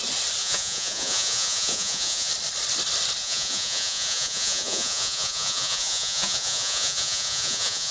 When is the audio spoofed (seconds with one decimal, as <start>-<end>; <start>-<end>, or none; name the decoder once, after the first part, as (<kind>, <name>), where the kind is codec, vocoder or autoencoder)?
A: 0.4-2.3 (vocoder, Vocos); 3.2-7.9